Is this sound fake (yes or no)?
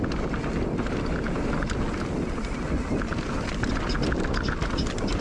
no